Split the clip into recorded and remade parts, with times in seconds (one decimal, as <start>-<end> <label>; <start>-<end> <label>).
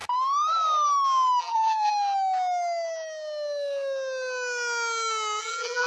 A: 0.0-1.4 recorded; 1.4-1.9 remade; 1.9-5.4 recorded; 5.4-5.9 remade